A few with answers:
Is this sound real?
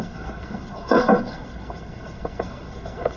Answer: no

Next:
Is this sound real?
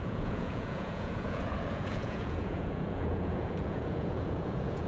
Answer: no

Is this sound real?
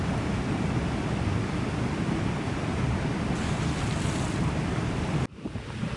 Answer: yes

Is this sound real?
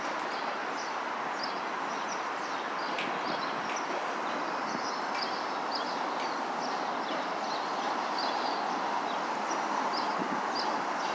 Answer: yes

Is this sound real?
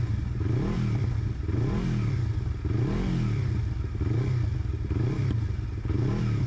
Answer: yes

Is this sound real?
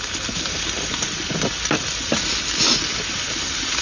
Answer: yes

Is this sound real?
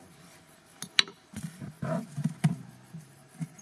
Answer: yes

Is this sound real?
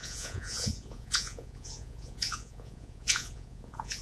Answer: no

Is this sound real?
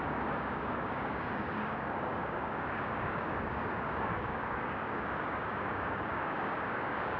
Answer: no